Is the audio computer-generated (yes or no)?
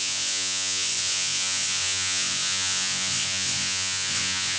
yes